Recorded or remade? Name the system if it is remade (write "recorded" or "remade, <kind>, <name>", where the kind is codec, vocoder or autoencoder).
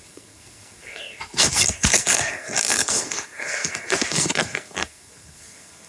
remade, codec, SNAC